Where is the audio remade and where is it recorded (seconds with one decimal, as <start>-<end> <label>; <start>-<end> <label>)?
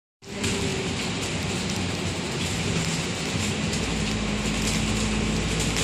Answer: 0.0-5.8 recorded